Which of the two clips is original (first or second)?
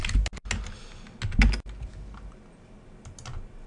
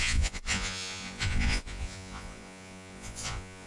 first